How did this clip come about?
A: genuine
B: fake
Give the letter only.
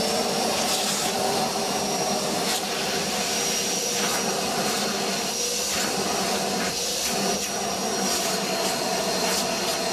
A